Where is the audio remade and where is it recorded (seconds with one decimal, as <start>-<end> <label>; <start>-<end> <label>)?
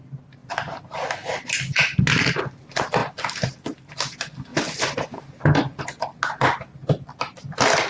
0.0-7.9 recorded